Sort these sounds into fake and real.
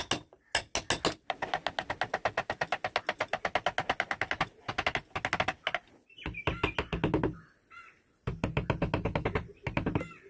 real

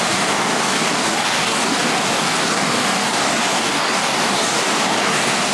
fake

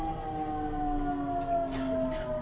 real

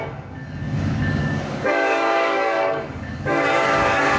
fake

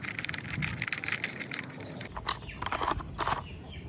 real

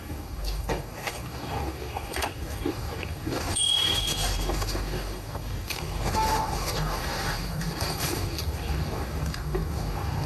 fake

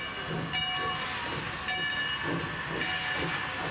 real